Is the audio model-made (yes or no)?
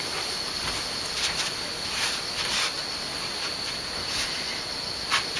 no